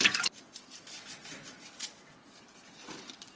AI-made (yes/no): no